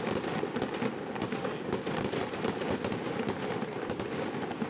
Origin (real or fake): real